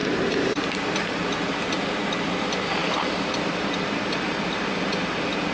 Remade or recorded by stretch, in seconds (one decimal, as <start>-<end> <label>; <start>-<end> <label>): 0.0-1.0 remade; 1.0-2.8 recorded; 2.8-4.0 remade; 4.0-5.5 recorded